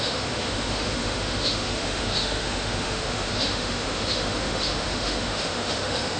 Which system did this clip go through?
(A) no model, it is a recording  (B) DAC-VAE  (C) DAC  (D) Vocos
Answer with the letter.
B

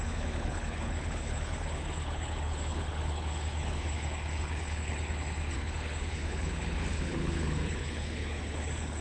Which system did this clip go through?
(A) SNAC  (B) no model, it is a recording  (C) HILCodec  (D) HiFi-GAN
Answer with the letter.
C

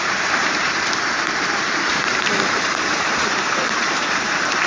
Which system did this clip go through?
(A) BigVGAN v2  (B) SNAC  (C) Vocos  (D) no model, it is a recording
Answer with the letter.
A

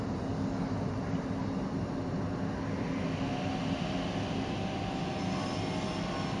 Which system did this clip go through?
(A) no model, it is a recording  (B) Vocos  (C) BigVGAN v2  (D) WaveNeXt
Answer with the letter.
A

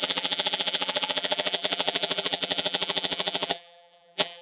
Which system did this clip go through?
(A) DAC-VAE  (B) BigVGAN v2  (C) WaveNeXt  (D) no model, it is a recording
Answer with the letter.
B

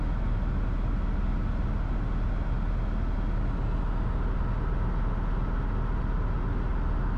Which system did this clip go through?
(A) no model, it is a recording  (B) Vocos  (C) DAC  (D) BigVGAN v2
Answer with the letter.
A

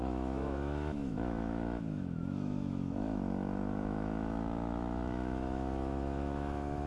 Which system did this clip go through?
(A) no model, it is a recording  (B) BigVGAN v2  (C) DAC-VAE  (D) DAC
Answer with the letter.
C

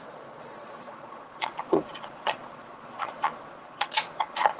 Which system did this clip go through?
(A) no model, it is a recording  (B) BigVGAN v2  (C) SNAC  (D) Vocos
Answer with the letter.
D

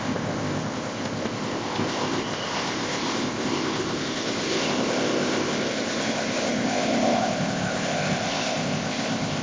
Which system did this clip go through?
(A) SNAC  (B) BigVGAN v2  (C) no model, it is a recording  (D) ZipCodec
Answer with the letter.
D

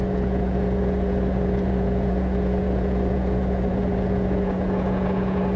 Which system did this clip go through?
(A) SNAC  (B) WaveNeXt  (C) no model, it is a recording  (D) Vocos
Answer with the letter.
D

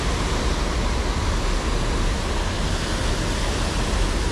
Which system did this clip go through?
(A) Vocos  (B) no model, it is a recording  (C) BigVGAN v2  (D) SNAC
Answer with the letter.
B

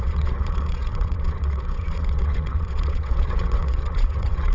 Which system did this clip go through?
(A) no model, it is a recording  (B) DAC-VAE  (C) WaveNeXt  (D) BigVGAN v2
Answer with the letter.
C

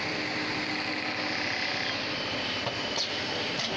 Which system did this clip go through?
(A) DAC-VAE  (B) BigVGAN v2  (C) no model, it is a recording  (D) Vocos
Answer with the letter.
C